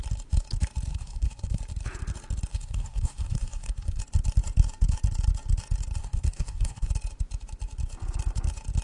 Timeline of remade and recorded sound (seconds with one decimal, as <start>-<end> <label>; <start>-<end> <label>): 0.0-0.9 recorded; 0.9-1.6 remade; 1.6-2.5 recorded; 2.5-4.0 remade; 4.0-6.0 recorded; 6.0-6.9 remade; 6.9-8.8 recorded